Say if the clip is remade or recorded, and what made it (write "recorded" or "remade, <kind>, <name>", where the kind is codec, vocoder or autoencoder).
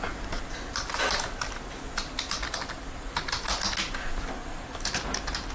recorded